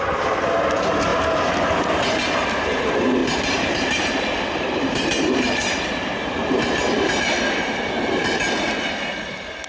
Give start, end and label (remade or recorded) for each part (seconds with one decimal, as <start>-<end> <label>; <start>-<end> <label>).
0.0-1.1 recorded; 1.1-1.7 remade; 1.7-3.2 recorded; 3.2-7.2 remade; 7.2-9.7 recorded